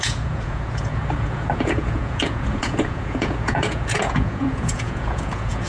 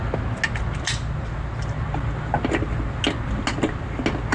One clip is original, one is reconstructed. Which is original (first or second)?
second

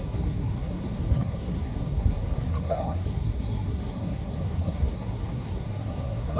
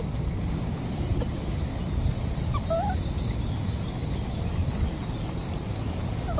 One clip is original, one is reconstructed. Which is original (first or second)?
second